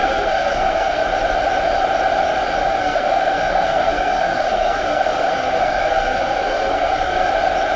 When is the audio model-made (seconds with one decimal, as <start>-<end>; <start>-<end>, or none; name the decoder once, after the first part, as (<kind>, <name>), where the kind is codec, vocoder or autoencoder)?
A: 0.0-1.0 (codec, SNAC); 2.6-7.3